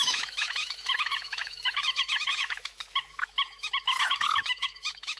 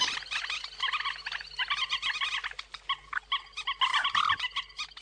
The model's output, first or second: first